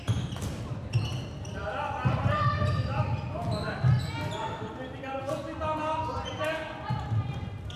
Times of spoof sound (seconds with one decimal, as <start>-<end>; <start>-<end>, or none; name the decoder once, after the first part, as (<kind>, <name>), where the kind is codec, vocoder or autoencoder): none